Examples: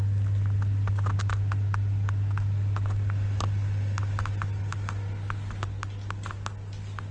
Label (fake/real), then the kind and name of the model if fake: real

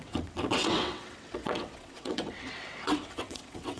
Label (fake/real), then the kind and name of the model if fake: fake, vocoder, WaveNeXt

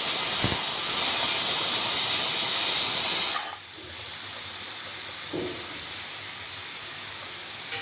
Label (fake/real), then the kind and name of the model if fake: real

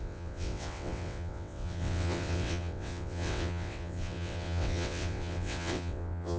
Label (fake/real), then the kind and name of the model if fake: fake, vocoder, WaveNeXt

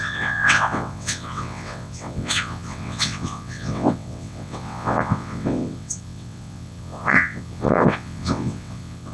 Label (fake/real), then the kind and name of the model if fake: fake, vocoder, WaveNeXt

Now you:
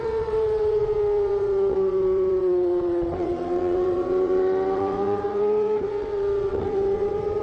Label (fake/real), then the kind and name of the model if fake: fake, vocoder, WaveNeXt